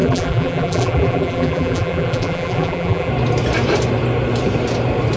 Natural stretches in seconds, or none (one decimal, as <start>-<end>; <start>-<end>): 3.1-5.2